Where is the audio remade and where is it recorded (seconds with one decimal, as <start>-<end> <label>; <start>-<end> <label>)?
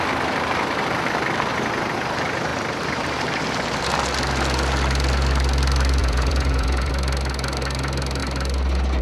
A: 0.0-6.0 recorded; 6.0-6.9 remade; 6.9-9.0 recorded